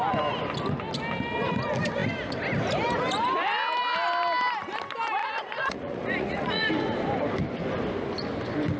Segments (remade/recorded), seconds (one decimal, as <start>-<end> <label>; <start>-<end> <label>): 0.0-5.2 recorded; 5.2-6.7 remade; 6.7-8.8 recorded